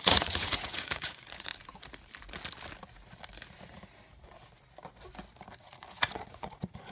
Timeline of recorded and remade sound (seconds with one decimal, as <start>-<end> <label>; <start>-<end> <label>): 0.0-1.5 remade; 1.5-5.6 recorded; 5.6-6.9 remade